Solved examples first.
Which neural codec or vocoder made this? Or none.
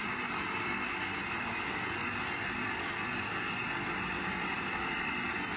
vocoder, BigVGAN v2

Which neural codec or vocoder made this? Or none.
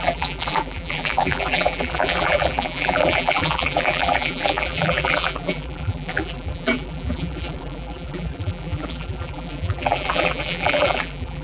vocoder, BigVGAN v2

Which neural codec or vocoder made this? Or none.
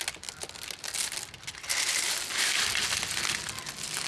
none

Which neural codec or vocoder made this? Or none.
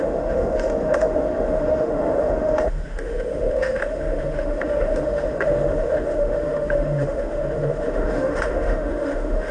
autoencoder, DAC-VAE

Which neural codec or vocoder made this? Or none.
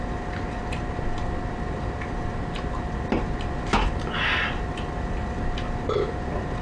none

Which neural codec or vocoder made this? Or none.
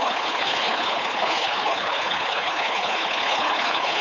codec, HILCodec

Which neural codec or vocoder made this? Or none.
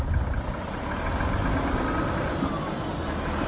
none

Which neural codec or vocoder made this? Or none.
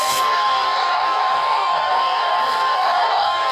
codec, DAC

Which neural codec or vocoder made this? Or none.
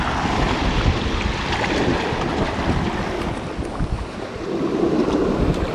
none